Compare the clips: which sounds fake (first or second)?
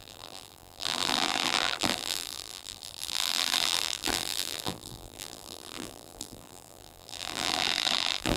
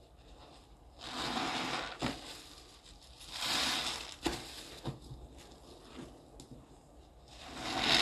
first